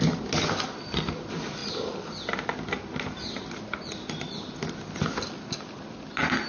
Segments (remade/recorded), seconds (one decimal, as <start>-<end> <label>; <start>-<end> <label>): 0.0-6.5 recorded